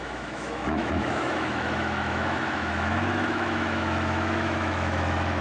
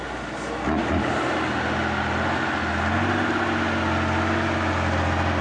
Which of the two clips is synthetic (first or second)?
first